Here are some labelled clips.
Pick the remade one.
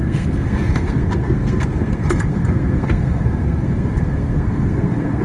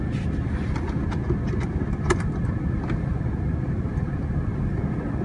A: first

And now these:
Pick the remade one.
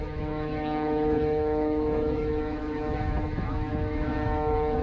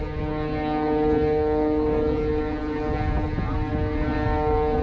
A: first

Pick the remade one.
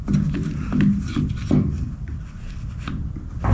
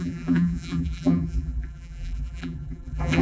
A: second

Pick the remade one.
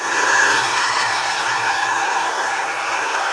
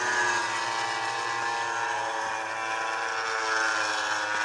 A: first